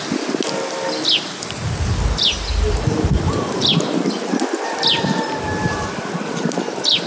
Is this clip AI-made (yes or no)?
no